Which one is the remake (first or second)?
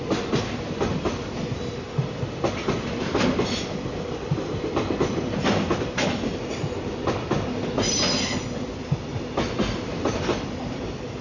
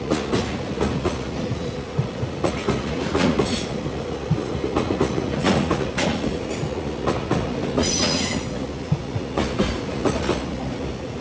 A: second